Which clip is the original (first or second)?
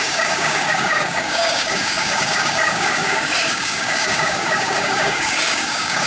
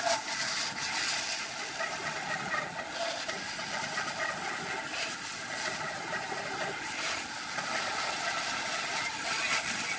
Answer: second